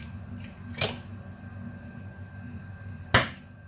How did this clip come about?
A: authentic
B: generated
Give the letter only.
A